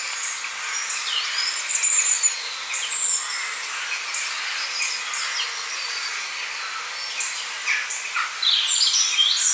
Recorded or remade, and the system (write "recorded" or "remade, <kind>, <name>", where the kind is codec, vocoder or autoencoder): recorded